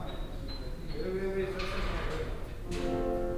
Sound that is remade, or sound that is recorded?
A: recorded